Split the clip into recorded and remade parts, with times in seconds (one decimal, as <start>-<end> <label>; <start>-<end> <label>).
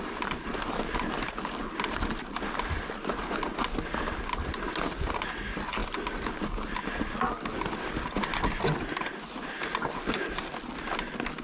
0.0-11.4 recorded